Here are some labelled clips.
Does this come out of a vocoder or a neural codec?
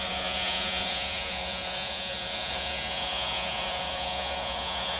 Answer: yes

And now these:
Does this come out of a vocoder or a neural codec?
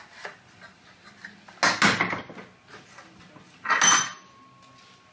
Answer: no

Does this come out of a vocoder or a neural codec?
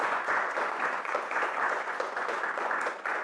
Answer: yes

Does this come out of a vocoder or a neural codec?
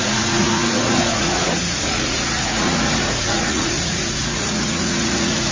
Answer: yes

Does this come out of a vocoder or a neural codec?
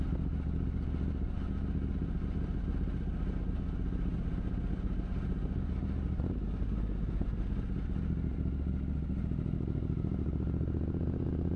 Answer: no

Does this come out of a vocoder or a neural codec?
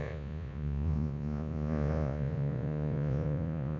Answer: yes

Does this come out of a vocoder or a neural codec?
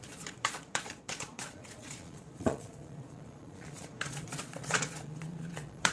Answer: yes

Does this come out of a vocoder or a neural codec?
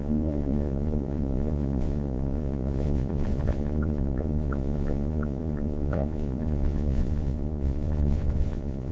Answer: yes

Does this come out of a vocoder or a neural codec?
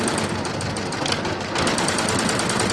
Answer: no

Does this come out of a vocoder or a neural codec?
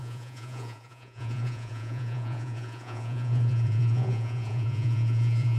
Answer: yes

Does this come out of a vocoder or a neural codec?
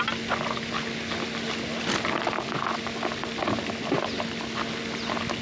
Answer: no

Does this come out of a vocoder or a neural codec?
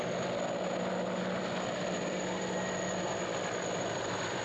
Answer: no